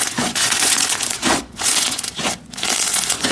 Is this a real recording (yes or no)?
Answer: no